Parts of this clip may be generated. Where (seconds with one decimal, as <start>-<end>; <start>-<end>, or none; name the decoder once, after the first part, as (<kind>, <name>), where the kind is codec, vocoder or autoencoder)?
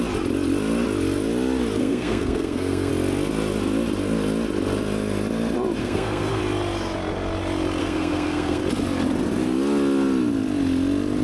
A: 1.8-2.9 (codec, SNAC); 5.8-6.4; 7.8-8.6